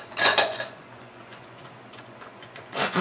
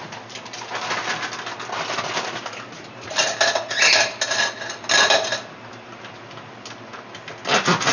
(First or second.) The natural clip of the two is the second